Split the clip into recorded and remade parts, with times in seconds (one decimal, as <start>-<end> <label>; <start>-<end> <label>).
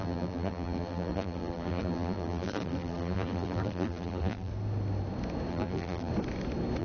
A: 0.0-4.5 remade; 4.5-5.5 recorded; 5.5-6.1 remade; 6.1-6.8 recorded